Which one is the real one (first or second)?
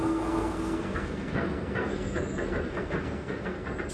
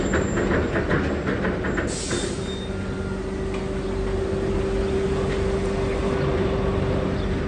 second